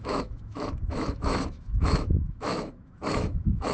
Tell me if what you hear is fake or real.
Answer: fake